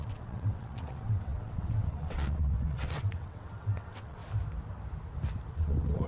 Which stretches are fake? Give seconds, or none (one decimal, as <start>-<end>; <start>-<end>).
0.0-4.2; 5.5-6.1